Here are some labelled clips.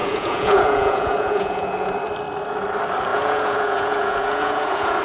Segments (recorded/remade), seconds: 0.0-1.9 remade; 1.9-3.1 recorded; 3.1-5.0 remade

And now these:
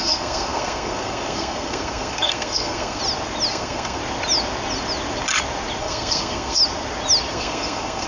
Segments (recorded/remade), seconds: 0.0-3.0 remade; 3.0-3.5 recorded; 3.5-4.0 remade; 4.0-5.8 recorded; 5.8-6.6 remade; 6.6-7.3 recorded; 7.3-8.1 remade

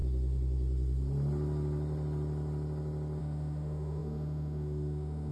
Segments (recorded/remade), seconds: 0.0-3.2 recorded; 3.2-5.3 remade

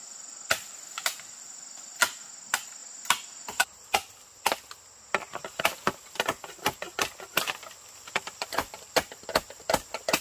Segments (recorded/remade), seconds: 0.0-10.2 recorded

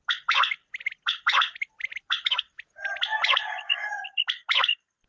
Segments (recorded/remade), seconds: 0.0-5.1 recorded